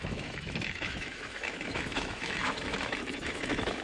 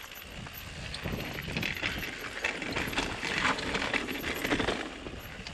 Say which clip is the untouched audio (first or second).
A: second